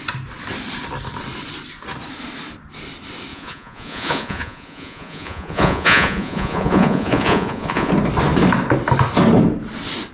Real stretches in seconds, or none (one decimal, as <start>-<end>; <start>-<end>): 0.0-3.3; 7.9-10.1